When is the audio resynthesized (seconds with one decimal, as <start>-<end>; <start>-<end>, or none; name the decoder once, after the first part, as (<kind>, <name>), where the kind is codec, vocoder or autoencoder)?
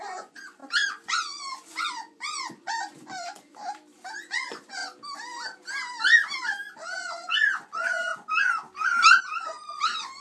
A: 0.0-3.6 (vocoder, Vocos); 4.2-4.8; 7.0-8.1; 9.2-10.2